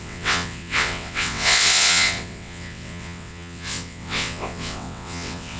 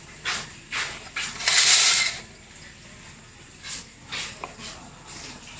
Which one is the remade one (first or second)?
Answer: first